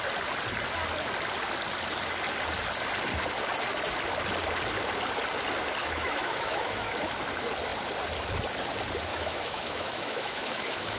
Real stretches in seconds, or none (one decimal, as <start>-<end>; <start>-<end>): 0.0-5.8; 6.9-9.1